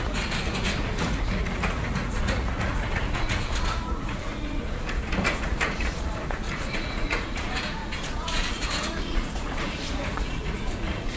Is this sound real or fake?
fake